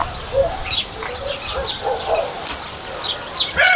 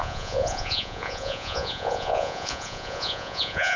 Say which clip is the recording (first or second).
first